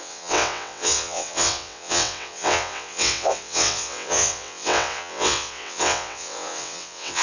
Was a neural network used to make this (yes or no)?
yes